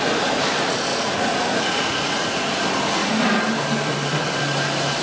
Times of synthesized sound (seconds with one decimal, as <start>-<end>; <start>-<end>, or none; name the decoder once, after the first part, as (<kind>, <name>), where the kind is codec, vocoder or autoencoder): 0.9-2.6 (vocoder, Vocos)